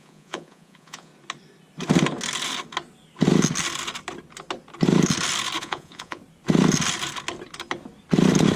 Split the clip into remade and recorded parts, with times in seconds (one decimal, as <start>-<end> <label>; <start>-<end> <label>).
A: 0.0-1.1 remade; 1.1-5.6 recorded; 5.6-6.2 remade; 6.2-8.6 recorded